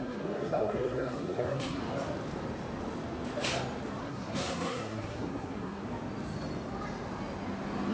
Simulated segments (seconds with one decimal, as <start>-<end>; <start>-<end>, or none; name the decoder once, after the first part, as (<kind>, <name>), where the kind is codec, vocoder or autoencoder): 0.0-1.8 (codec, SNAC); 4.0-5.8